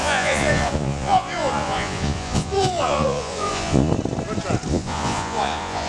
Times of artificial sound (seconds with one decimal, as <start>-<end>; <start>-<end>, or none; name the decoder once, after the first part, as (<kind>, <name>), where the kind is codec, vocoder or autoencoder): 0.0-3.9 (vocoder, Vocos); 4.7-5.9